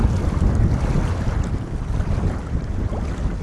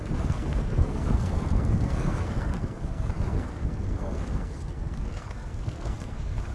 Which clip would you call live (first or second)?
first